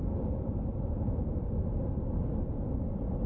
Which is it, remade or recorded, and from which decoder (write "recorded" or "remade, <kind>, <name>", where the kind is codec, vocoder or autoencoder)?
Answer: recorded